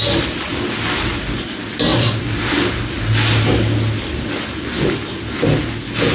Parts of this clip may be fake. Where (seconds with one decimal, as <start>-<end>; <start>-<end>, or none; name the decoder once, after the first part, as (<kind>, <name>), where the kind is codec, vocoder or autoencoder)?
none